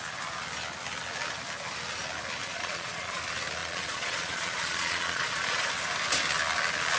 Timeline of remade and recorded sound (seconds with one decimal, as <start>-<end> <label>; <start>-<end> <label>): 0.0-2.4 recorded; 2.4-3.2 remade; 3.2-3.6 recorded; 3.6-5.7 remade; 5.7-7.0 recorded